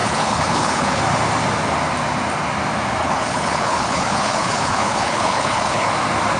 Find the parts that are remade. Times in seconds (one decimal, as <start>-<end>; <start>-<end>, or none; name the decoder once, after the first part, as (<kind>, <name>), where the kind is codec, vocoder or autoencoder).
0.0-1.0 (codec, HILCodec); 3.0-5.9